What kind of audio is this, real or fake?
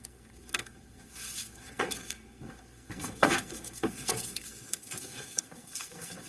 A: fake